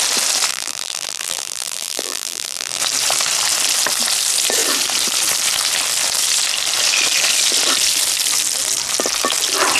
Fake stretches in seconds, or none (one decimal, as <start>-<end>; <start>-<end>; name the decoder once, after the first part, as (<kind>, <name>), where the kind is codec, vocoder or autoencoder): 0.5-2.8 (vocoder, BigVGAN v2)

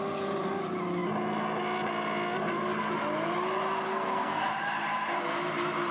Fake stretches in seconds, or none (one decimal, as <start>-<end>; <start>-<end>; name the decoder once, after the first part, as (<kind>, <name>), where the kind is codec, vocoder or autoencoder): 3.9-4.5 (codec, SNAC)

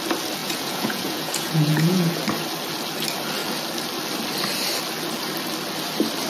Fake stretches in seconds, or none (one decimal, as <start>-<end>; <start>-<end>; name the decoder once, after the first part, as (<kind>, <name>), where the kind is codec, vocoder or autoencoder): 0.4-2.1 (vocoder, Vocos)

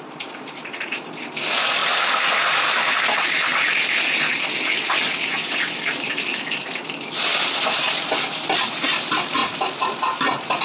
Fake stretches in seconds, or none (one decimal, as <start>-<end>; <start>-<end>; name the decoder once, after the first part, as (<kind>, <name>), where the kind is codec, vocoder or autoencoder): none

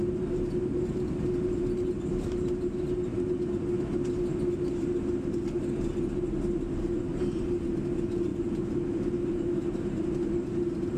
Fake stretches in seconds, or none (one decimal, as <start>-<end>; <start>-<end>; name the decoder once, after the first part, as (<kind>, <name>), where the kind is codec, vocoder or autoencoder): 8.3-10.4 (vocoder, BigVGAN v2)

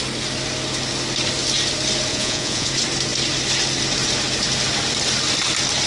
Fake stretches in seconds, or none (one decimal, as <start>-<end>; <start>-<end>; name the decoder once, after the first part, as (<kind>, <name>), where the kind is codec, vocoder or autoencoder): 2.1-2.7 (vocoder, Vocos)